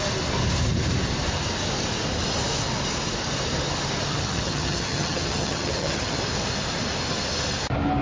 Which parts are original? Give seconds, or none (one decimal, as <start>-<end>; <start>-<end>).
0.0-4.1; 6.2-8.0